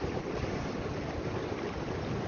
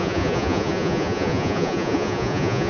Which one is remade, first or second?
second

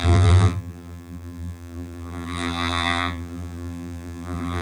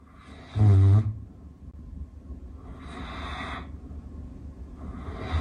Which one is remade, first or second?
first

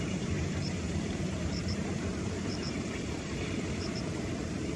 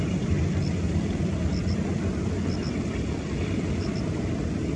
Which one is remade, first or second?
first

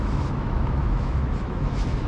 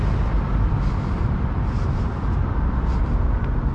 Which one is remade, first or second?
first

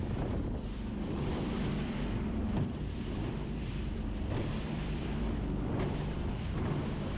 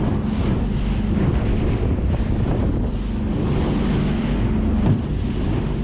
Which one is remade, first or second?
first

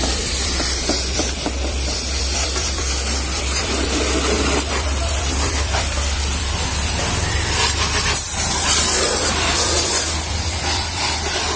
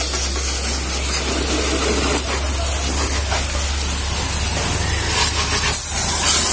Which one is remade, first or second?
first